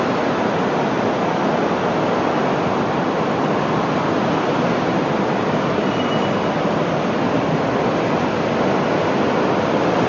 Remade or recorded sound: recorded